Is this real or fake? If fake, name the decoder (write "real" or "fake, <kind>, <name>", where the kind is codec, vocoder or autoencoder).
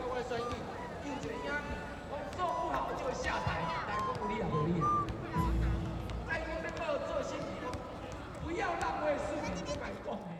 real